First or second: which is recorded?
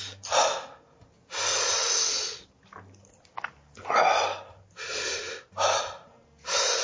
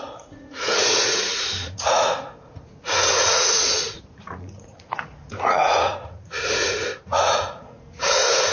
first